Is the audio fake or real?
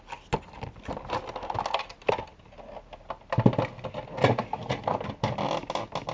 real